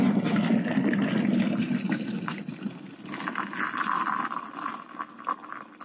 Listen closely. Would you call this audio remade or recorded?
recorded